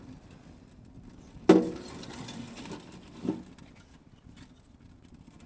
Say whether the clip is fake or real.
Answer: real